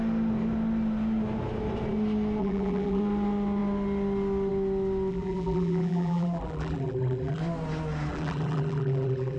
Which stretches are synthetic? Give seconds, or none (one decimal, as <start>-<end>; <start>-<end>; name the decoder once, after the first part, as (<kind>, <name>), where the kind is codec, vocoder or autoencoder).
2.4-3.0 (vocoder, BigVGAN v2); 5.1-7.4; 8.1-9.4